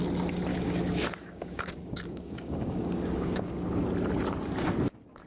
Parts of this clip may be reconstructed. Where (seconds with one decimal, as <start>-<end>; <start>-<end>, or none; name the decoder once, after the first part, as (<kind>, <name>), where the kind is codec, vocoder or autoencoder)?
0.5-3.7 (codec, DAC)